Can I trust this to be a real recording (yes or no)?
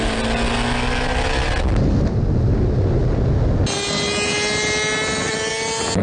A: yes